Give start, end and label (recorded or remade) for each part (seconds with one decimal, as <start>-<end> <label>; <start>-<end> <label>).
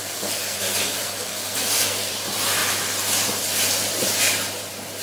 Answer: 0.0-2.1 remade; 2.1-5.0 recorded